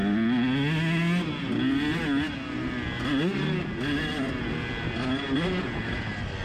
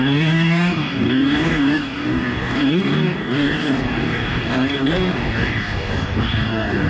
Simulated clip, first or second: second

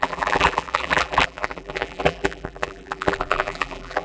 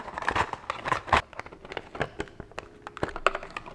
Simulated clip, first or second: first